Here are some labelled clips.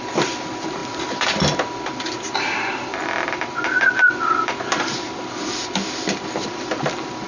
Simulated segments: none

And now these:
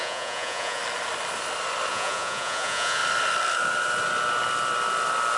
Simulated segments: 0.0-0.8 (vocoder, Vocos); 1.9-3.0

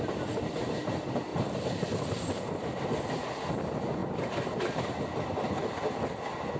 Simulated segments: 1.3-2.4 (vocoder, BigVGAN v2)

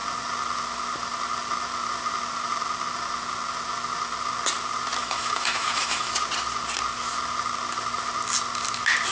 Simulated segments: 5.0-6.1 (autoencoder, DAC-VAE)

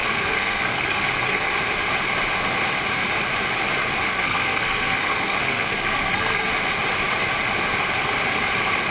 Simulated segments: 0.0-1.6 (codec, SNAC); 4.1-6.5